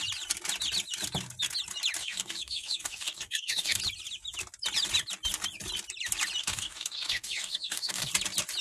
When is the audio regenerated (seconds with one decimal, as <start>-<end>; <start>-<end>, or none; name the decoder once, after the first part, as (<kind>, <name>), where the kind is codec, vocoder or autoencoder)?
2.0-3.8 (codec, DAC); 6.4-8.1